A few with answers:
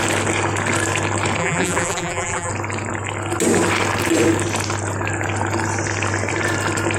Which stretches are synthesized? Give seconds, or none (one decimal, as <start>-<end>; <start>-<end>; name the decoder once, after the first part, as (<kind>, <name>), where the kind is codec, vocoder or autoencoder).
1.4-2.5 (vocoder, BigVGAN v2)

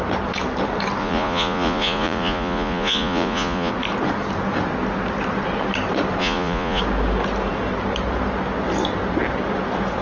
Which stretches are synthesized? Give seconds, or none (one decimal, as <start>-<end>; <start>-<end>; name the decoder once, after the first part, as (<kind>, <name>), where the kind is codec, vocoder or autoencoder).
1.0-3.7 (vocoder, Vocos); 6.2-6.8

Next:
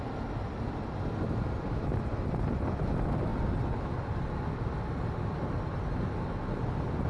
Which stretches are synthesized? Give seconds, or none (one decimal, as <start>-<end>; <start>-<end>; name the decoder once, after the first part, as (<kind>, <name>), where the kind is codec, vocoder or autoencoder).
none

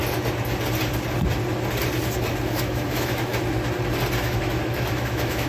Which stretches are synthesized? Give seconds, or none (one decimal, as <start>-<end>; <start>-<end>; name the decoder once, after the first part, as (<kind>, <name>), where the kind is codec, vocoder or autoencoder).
2.5-3.3 (autoencoder, DAC-VAE); 4.2-5.5

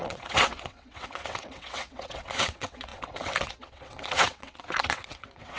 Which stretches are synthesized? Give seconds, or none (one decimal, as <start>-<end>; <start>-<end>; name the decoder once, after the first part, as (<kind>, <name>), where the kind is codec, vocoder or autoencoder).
0.0-5.6 (vocoder, WaveNeXt)